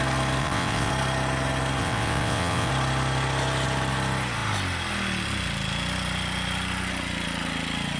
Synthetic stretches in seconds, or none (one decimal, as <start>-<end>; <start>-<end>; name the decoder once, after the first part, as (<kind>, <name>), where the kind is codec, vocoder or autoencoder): 0.4-0.9 (vocoder, WaveNeXt); 1.8-2.7